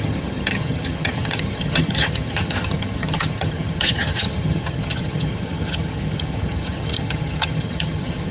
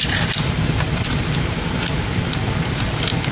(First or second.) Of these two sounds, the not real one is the first